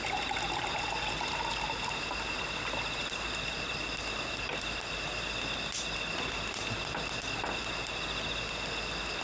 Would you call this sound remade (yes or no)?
no